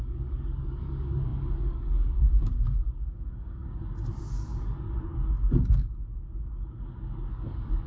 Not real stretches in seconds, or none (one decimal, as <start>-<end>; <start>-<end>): 0.0-3.6; 4.2-5.1; 7.3-7.9